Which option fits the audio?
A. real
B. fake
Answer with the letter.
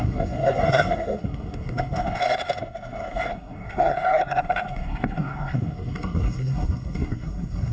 B